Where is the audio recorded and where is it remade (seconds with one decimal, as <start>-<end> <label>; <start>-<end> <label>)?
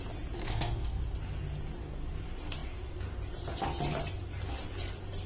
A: 0.0-0.4 recorded; 0.4-1.0 remade; 1.0-5.3 recorded